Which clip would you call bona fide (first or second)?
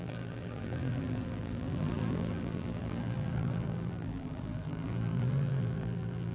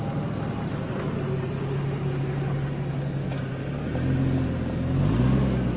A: second